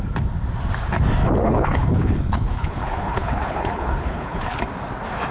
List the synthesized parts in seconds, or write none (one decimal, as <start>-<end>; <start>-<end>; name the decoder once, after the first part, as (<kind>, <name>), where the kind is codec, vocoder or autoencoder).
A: 1.4-4.6 (codec, HILCodec)